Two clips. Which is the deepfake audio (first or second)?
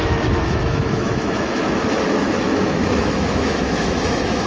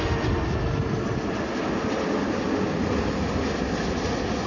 first